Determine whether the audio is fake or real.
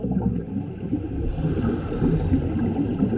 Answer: real